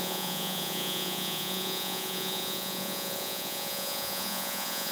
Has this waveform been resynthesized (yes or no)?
yes